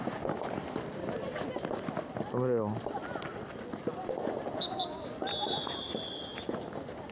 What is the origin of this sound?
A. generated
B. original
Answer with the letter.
B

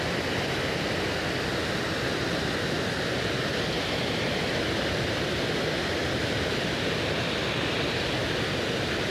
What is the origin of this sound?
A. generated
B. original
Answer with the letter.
B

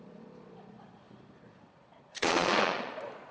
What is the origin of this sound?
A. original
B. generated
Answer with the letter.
B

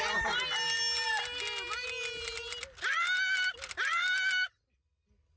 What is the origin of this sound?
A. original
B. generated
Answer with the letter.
A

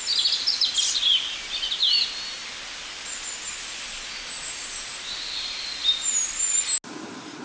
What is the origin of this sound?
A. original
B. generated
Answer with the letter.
A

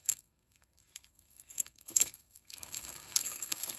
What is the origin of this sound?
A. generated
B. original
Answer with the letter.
A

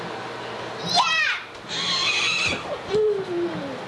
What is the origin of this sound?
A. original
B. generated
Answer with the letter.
A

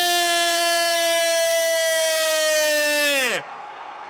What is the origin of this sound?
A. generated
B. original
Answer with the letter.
A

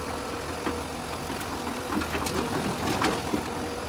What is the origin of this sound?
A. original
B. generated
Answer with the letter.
A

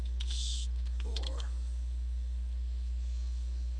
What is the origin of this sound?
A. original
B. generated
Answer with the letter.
B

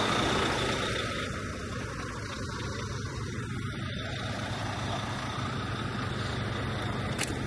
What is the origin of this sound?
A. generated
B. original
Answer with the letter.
B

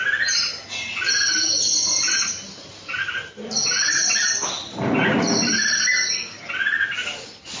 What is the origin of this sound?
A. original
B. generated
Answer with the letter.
A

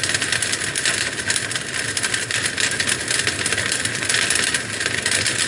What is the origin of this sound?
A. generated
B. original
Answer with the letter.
B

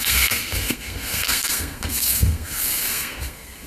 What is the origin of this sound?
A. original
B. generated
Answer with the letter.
B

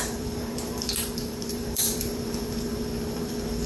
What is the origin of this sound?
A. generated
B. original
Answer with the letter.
A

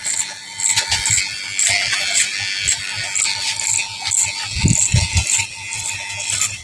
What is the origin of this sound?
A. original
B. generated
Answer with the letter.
A